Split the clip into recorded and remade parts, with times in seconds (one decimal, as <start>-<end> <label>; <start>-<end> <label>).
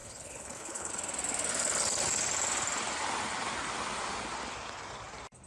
0.0-0.9 remade; 0.9-5.5 recorded